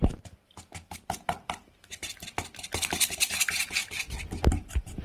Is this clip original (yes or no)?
yes